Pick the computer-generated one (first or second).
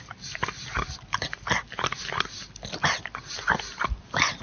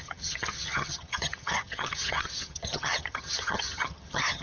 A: second